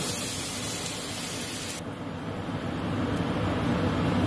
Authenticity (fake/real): real